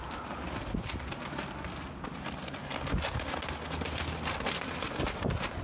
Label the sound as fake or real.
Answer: real